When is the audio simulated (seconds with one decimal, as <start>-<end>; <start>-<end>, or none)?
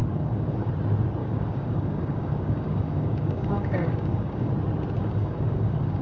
0.0-0.7; 1.2-4.5; 5.0-6.0